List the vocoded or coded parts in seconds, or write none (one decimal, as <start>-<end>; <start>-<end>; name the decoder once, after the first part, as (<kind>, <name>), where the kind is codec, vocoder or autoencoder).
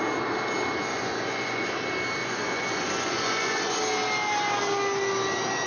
0.9-1.7 (vocoder, Vocos); 2.2-3.8